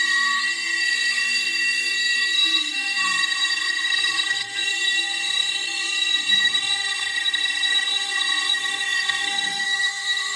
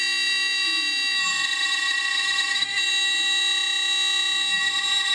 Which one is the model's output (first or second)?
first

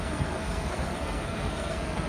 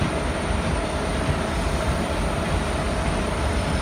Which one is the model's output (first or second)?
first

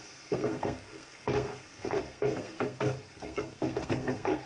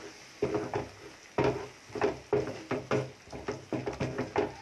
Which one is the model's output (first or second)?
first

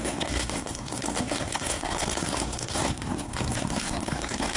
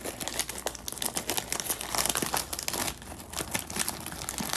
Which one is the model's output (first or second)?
first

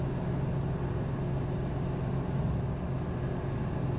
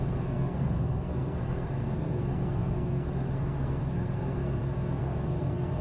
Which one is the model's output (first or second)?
second